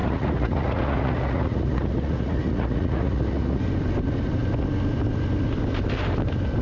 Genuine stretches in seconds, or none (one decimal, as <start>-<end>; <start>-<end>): 3.6-6.6